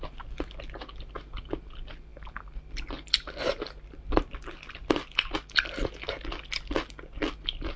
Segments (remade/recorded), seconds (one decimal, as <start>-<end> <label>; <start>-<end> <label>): 0.0-7.8 recorded